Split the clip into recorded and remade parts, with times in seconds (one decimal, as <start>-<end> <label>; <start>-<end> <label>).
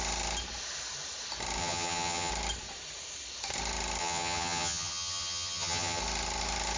0.0-1.6 recorded; 1.6-2.3 remade; 2.3-4.0 recorded; 4.0-6.0 remade; 6.0-6.8 recorded